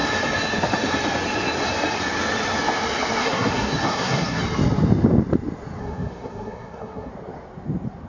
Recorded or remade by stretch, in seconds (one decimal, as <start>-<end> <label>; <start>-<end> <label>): 0.0-3.2 recorded; 3.2-4.4 remade; 4.4-5.8 recorded; 5.8-7.1 remade; 7.1-8.1 recorded